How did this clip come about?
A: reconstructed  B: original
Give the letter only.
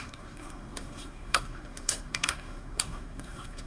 A